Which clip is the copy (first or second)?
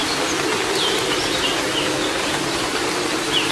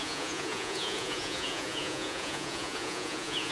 second